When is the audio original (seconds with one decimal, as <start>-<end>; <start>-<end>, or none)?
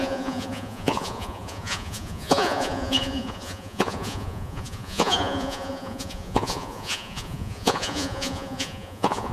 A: none